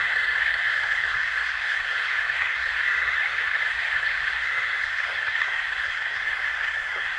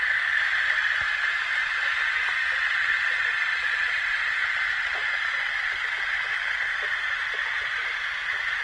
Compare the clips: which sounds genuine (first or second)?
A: second